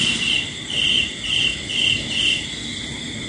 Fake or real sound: real